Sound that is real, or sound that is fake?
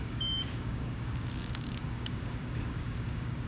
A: fake